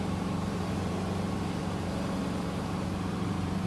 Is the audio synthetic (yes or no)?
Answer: yes